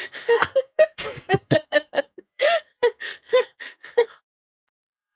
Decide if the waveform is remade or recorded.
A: remade